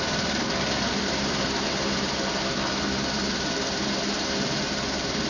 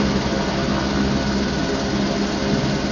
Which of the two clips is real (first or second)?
second